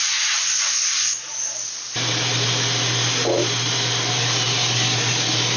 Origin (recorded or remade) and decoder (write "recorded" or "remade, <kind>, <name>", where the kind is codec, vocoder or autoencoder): recorded